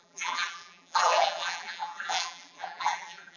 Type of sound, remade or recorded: remade